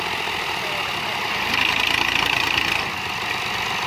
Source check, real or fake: real